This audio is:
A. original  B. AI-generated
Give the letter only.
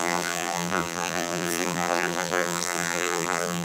B